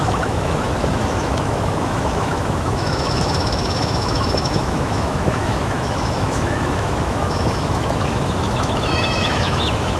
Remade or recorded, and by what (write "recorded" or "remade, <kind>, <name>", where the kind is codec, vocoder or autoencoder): remade, autoencoder, DAC-VAE